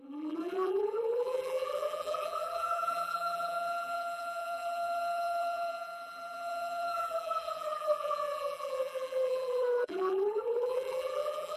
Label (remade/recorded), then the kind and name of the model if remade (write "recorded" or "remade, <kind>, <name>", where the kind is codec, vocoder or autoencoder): remade, vocoder, BigVGAN v2